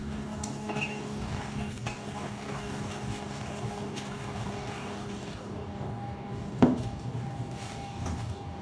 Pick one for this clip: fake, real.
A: fake